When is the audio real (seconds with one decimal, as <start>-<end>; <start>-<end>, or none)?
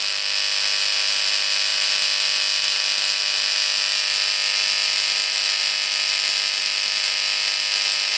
0.0-8.2